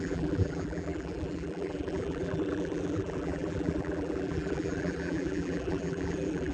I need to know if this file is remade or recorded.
remade